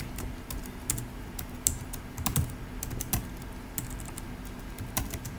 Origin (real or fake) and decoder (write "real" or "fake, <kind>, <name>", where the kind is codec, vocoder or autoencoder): real